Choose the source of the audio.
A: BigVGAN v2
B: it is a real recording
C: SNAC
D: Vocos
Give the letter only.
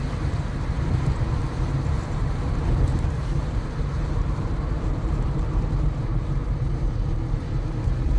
A